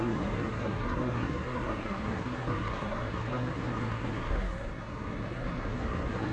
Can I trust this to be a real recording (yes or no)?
no